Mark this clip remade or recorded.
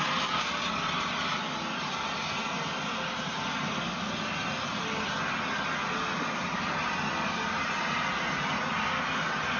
recorded